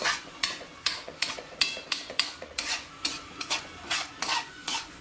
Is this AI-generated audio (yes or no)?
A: yes